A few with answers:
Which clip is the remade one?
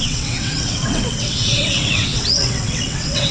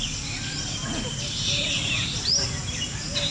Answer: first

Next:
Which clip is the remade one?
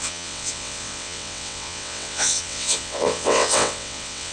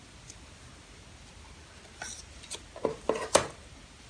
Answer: first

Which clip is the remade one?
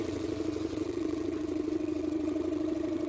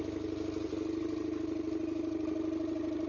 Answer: first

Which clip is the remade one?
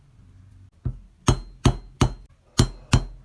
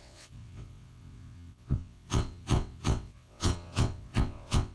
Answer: second